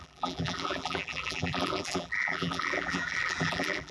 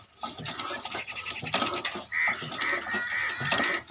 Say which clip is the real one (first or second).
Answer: second